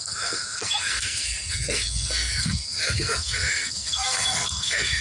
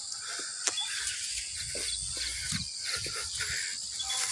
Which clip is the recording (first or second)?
second